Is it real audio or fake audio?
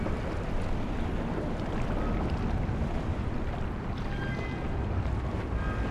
real